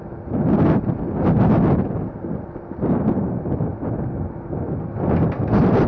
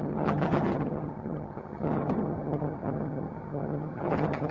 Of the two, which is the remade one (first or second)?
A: second